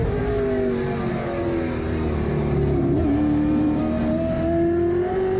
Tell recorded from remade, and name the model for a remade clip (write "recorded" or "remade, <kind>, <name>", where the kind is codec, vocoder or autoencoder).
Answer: recorded